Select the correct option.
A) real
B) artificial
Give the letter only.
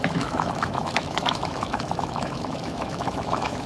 B